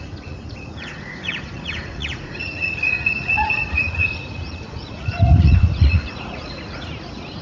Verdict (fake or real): fake